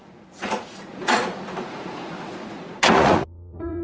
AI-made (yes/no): yes